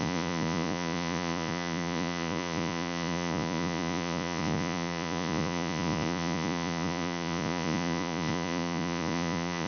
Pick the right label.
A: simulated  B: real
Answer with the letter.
A